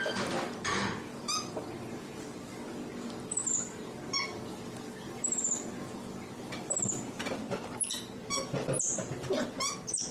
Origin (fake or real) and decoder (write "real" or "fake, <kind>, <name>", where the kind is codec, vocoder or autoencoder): fake, vocoder, BigVGAN v2